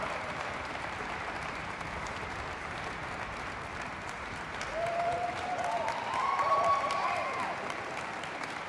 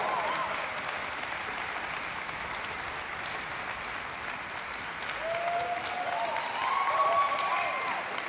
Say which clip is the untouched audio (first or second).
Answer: second